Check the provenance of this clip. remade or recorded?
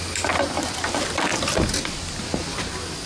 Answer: recorded